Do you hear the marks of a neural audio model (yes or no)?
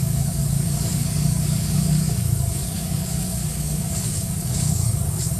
yes